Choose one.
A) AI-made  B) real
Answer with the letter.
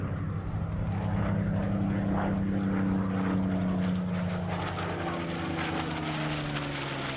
B